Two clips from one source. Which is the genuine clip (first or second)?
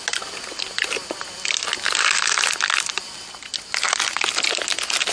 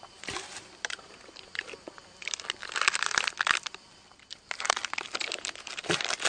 first